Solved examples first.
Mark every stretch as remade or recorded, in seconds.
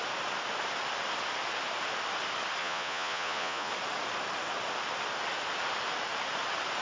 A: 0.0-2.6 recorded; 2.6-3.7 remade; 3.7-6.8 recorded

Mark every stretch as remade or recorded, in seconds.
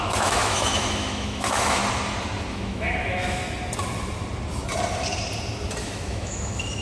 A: 0.0-1.8 remade; 1.8-2.5 recorded; 2.5-3.4 remade; 3.4-5.8 recorded; 5.8-6.8 remade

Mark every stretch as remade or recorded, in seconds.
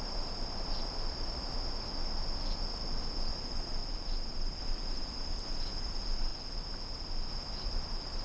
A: 0.0-1.5 remade; 1.5-3.3 recorded; 3.3-3.8 remade; 3.8-4.6 recorded; 4.6-6.3 remade; 6.3-7.3 recorded; 7.3-8.2 remade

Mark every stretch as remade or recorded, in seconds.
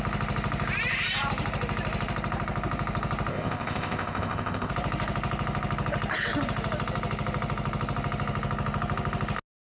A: 0.0-3.3 recorded; 3.3-4.7 remade; 4.7-9.7 recorded